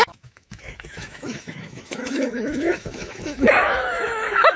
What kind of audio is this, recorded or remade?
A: remade